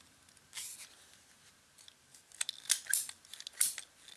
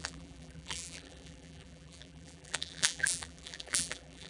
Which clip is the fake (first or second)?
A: second